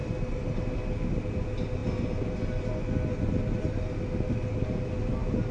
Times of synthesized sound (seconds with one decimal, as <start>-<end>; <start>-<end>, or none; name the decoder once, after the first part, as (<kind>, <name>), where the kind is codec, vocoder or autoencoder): none